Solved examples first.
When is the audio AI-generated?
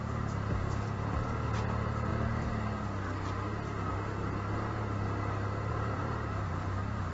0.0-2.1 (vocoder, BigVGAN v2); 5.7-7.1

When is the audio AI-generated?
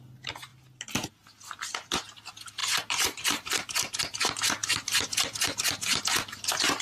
2.6-4.0 (vocoder, BigVGAN v2)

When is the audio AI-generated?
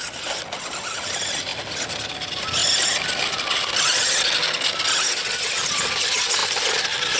none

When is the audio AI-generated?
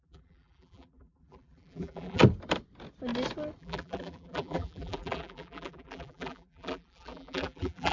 0.0-2.2 (vocoder, BigVGAN v2); 3.6-7.9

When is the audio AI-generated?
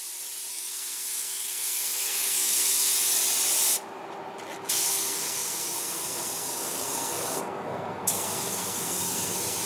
0.5-2.9 (codec, SNAC); 4.7-9.6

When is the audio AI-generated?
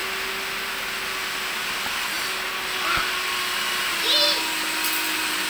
none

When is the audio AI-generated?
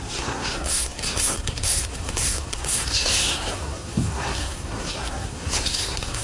0.0-6.2 (codec, SNAC)